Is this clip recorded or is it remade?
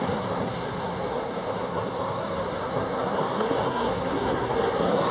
remade